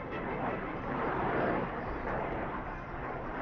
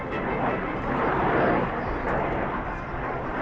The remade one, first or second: first